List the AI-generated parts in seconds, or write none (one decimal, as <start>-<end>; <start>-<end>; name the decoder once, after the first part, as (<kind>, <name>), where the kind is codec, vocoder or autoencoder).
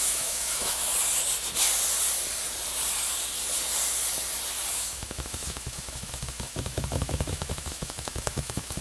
0.0-0.9 (autoencoder, DAC-VAE); 4.7-8.8